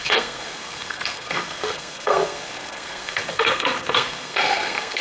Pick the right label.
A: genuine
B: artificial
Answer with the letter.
B